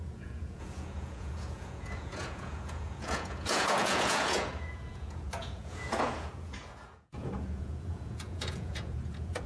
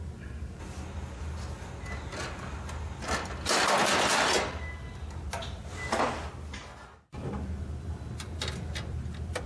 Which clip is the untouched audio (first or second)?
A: second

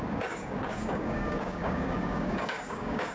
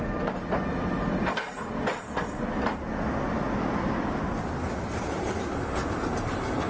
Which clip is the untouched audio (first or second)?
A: second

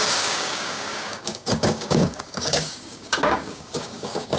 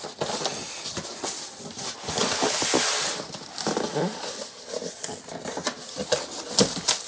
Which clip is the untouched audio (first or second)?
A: second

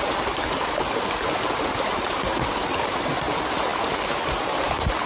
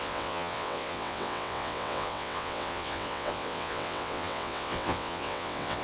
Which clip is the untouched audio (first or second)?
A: first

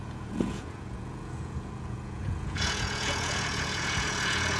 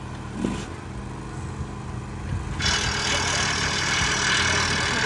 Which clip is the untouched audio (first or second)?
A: second